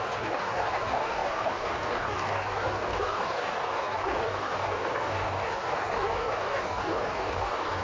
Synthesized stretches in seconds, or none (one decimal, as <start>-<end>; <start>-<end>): 0.0-7.8